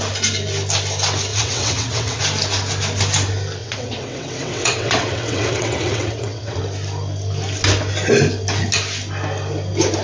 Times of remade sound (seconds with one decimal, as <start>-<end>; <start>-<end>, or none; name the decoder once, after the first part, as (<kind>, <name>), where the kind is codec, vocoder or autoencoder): 1.3-2.2 (vocoder, WaveNeXt); 3.6-6.6